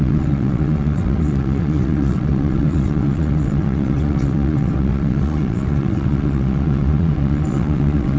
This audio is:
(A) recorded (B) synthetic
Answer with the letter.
B